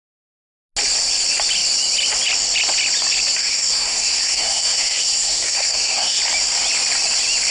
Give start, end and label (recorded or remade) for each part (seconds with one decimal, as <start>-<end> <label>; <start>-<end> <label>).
0.0-3.4 recorded; 3.4-6.2 remade; 6.2-7.5 recorded